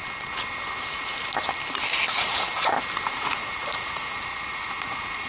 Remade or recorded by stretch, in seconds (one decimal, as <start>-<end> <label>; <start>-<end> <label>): 0.0-2.1 recorded; 2.1-2.5 remade; 2.5-3.1 recorded; 3.1-5.3 remade